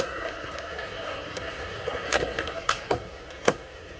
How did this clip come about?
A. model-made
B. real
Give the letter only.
A